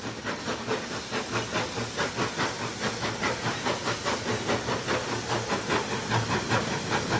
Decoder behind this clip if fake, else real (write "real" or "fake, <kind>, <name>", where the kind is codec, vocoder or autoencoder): real